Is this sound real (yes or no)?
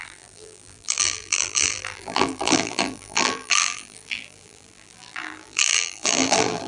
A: no